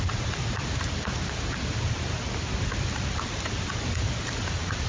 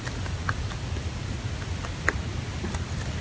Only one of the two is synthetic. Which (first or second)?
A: first